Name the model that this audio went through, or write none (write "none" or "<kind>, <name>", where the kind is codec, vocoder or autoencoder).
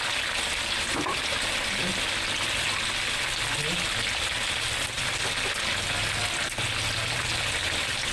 none